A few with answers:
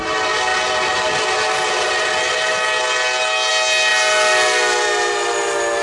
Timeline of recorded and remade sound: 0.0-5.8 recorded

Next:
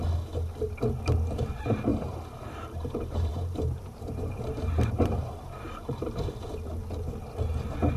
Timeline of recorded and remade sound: 0.0-1.9 recorded; 1.9-6.1 remade; 6.1-8.0 recorded

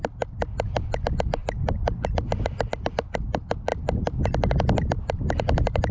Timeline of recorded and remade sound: 0.0-5.9 recorded

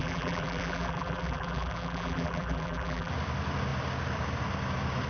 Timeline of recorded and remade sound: 0.0-3.1 remade; 3.1-5.1 recorded